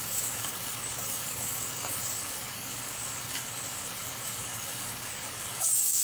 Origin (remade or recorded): remade